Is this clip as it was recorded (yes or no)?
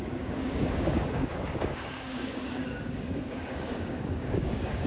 no